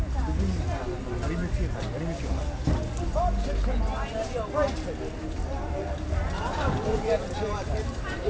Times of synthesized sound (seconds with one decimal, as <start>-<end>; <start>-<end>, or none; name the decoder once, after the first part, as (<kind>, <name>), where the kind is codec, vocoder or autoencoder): 5.5-8.3 (vocoder, BigVGAN v2)